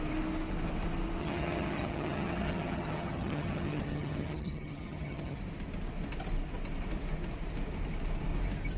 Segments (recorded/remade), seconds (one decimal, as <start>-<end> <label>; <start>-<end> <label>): 0.0-1.2 recorded; 1.2-5.4 remade; 5.4-8.8 recorded